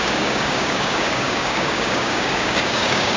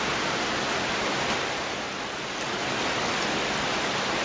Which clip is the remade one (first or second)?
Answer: first